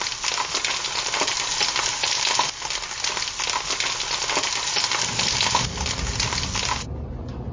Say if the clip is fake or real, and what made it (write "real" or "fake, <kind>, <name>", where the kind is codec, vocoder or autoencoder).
real